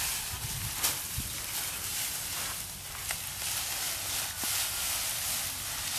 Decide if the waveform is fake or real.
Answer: real